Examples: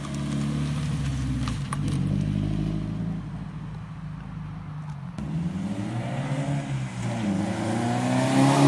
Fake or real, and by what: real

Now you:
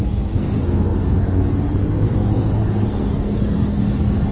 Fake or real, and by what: fake, codec, SNAC